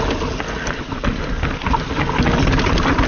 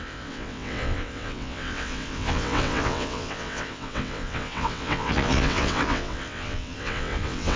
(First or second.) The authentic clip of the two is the first